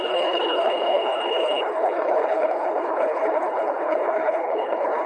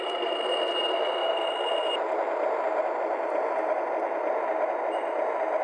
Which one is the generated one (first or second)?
first